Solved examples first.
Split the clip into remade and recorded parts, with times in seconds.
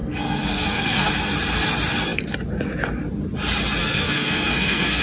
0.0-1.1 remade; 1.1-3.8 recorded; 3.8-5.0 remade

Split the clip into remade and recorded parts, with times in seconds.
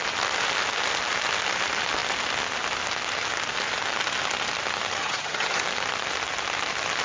0.0-5.0 recorded; 5.0-5.6 remade; 5.6-7.0 recorded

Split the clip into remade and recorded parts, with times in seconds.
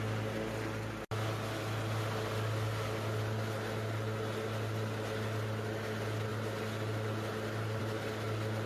0.0-8.7 recorded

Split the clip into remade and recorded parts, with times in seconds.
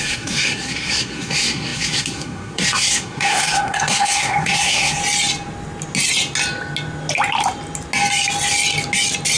0.0-5.0 remade; 5.0-9.4 recorded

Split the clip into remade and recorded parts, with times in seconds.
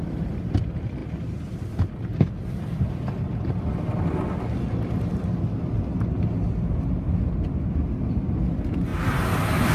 0.0-9.7 recorded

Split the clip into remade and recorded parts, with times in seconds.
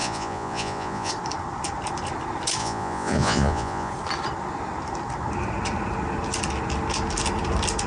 0.0-1.1 remade; 1.1-2.6 recorded; 2.6-3.9 remade; 3.9-7.9 recorded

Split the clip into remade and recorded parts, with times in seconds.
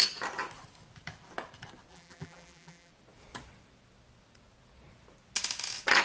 0.0-1.9 recorded; 1.9-2.9 remade; 2.9-6.0 recorded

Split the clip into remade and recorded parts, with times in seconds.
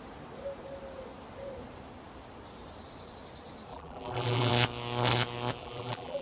0.0-3.7 recorded; 3.7-4.5 remade; 4.5-5.6 recorded; 5.6-6.2 remade